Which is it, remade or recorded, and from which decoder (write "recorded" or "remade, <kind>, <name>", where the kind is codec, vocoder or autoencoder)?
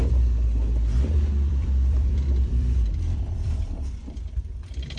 remade, vocoder, BigVGAN v2